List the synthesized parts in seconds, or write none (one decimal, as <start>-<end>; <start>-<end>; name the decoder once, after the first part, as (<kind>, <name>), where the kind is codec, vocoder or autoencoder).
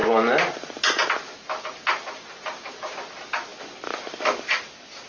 none